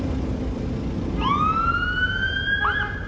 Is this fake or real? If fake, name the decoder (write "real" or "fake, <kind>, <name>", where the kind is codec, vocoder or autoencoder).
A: real